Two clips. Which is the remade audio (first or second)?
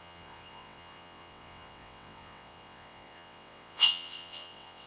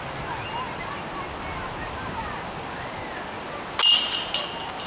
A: first